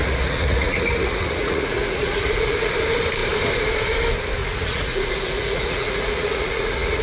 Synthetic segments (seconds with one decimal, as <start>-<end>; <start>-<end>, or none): 0.0-2.7; 4.4-7.0